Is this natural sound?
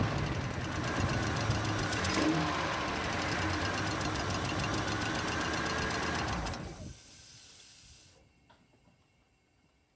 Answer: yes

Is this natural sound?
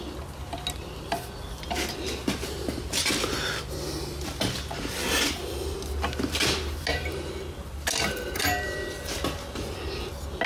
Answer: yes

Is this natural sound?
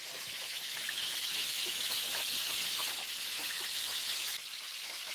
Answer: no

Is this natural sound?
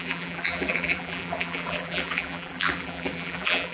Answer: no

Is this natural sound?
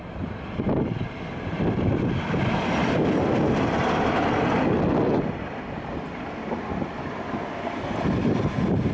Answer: yes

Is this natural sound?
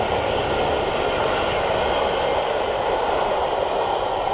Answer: yes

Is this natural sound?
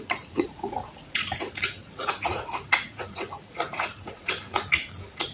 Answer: no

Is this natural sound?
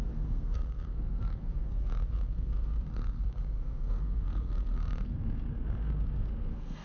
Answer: no